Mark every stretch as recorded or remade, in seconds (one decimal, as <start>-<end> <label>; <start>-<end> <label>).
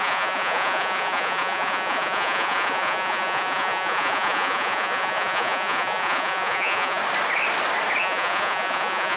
0.0-7.0 remade; 7.0-8.0 recorded; 8.0-9.2 remade